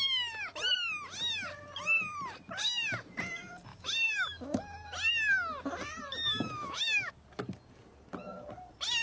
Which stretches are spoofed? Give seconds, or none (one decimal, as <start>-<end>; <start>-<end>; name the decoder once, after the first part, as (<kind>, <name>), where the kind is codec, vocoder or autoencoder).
3.7-4.6 (autoencoder, DAC-VAE); 6.2-7.1